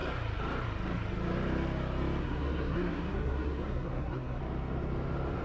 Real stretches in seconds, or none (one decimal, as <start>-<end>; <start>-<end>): 0.0-2.2; 4.4-5.4